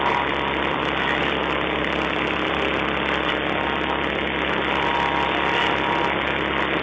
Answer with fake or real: real